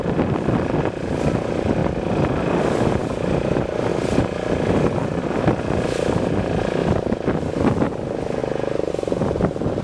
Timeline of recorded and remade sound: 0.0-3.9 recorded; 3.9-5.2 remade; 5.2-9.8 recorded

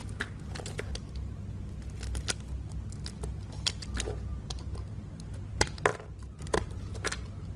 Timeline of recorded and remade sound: 0.0-7.6 recorded